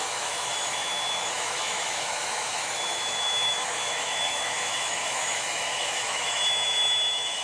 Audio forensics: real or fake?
fake